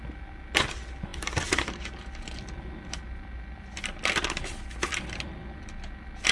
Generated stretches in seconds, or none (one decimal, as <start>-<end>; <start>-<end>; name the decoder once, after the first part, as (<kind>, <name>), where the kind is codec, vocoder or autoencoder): none